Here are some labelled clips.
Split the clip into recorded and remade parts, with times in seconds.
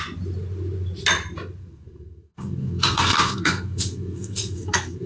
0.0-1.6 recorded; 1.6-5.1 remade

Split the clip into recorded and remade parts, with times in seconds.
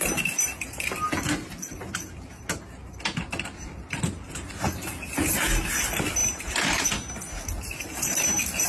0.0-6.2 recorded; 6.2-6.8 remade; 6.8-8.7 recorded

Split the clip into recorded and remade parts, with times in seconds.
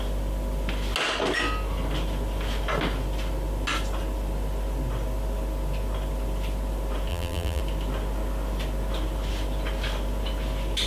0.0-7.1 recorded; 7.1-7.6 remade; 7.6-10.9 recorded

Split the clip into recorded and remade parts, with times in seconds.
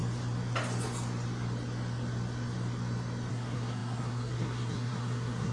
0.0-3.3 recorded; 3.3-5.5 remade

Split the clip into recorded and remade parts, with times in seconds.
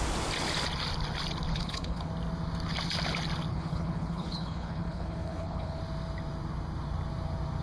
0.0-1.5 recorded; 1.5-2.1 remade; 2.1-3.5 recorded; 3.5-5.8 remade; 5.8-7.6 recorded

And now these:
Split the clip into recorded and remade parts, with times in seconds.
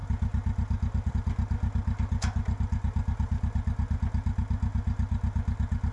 0.0-5.9 recorded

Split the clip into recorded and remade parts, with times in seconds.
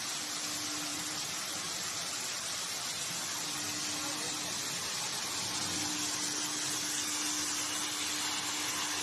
0.0-0.9 recorded; 0.9-2.6 remade; 2.6-9.0 recorded